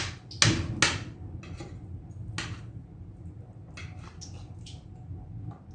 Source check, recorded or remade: recorded